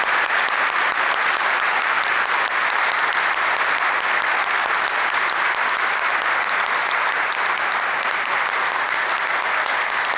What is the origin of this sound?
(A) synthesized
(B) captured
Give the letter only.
B